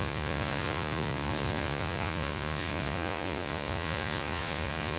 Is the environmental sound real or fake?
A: fake